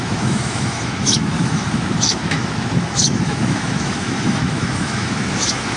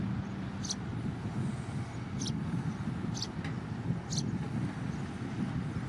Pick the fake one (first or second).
first